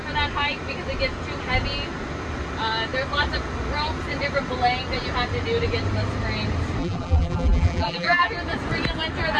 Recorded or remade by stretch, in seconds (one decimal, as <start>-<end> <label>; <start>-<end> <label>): 0.0-6.8 recorded; 6.8-8.3 remade; 8.3-9.4 recorded

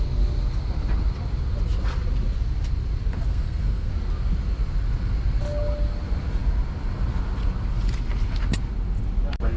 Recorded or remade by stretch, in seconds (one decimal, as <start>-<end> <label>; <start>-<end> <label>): 0.0-3.3 recorded; 3.3-3.9 remade; 3.9-9.6 recorded

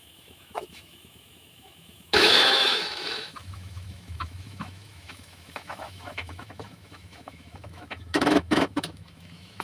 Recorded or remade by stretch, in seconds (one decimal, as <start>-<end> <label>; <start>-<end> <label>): 0.0-9.6 remade

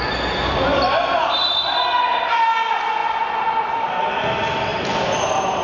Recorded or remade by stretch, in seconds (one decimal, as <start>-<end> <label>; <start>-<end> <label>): 0.0-0.4 recorded; 0.4-2.4 remade; 2.4-3.0 recorded; 3.0-4.0 remade; 4.0-4.7 recorded; 4.7-5.6 remade

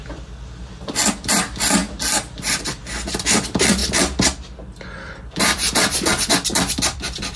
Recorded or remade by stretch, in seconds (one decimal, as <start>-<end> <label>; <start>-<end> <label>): 0.0-1.8 remade; 1.8-2.5 recorded; 2.5-3.8 remade; 3.8-5.2 recorded; 5.2-7.4 remade